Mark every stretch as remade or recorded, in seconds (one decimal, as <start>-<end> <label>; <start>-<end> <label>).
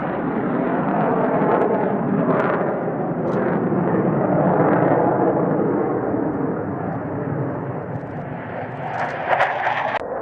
0.0-10.2 recorded